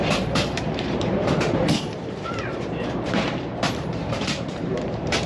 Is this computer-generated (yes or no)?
yes